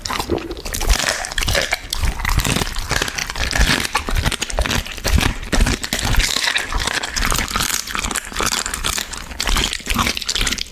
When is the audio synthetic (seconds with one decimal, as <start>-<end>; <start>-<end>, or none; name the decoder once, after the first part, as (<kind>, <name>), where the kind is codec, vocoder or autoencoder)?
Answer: none